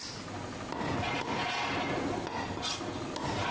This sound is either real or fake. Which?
real